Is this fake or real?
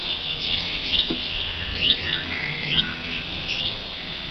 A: fake